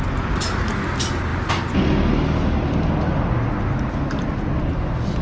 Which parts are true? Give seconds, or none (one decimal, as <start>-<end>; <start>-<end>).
0.0-5.2